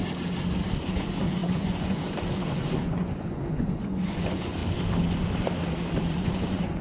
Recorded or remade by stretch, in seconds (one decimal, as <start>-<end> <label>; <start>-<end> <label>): 0.0-0.9 recorded; 0.9-4.6 remade; 4.6-6.1 recorded; 6.1-6.8 remade